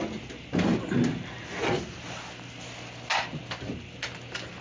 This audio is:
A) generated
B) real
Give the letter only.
B